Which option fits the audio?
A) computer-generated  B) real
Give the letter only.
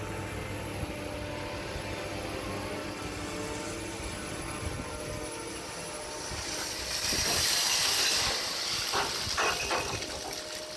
B